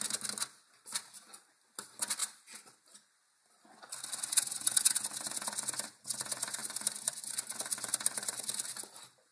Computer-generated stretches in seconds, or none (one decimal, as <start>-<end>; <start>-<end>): 6.6-8.4

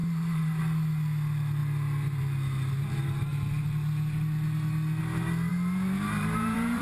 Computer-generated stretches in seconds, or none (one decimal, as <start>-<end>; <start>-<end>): 0.0-0.6; 5.5-6.8

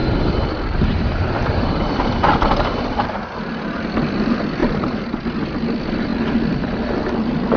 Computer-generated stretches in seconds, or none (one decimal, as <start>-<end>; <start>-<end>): 0.0-3.1